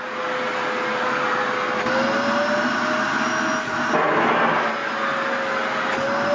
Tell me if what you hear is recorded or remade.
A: recorded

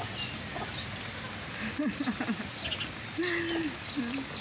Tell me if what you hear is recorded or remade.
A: recorded